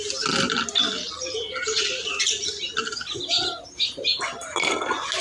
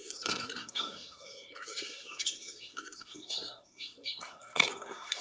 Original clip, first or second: first